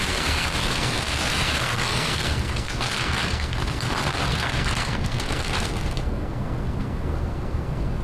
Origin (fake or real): fake